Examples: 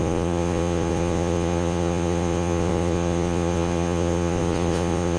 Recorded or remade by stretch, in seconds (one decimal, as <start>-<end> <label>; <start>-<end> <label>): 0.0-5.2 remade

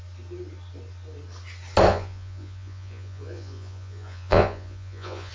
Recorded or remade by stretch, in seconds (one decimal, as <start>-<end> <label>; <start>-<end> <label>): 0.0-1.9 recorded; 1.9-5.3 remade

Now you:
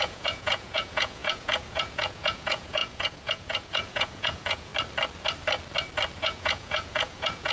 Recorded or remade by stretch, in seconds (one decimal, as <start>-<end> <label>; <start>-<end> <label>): 0.0-4.7 remade; 4.7-6.2 recorded; 6.2-7.5 remade

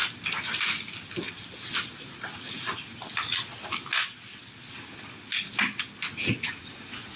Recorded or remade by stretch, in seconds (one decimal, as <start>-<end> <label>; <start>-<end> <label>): 0.0-6.1 recorded; 6.1-7.2 remade

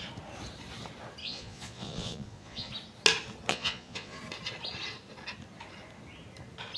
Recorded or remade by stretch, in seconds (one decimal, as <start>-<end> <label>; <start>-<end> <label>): 0.0-1.2 recorded; 1.2-2.7 remade; 2.7-3.5 recorded; 3.5-4.2 remade; 4.2-6.8 recorded